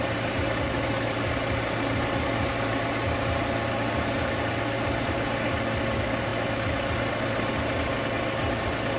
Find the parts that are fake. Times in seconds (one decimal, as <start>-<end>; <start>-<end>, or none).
none